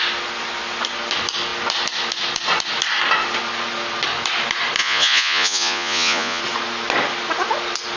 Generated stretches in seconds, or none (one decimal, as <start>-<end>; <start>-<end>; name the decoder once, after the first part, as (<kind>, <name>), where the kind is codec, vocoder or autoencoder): 4.8-6.4 (vocoder, Vocos)